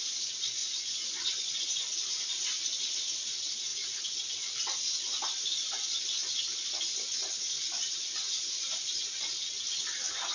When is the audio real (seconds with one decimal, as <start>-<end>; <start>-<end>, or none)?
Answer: 0.0-0.6; 1.8-10.3